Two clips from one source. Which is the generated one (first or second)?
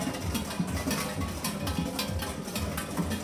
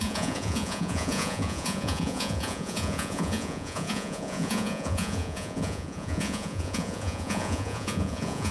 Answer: second